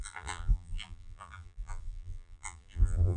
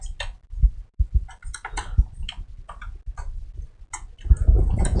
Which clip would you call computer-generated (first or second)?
first